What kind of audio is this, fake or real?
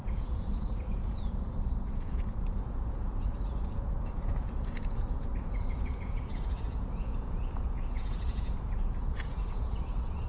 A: fake